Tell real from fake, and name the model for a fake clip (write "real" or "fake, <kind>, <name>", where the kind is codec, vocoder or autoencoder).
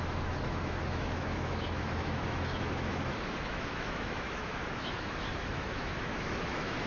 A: fake, autoencoder, DAC-VAE